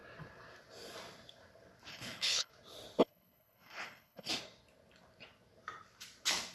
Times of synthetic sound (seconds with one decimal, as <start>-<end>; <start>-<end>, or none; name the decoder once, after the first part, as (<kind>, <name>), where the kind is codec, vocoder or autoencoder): 1.9-2.5 (codec, HILCodec); 3.0-4.3